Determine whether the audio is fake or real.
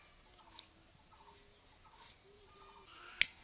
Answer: real